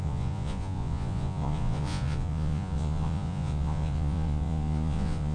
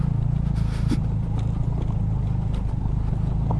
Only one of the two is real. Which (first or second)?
second